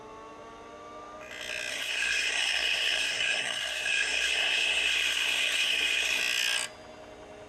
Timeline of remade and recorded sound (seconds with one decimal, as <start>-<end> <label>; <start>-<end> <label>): 0.0-1.7 recorded; 1.7-6.2 remade; 6.2-7.5 recorded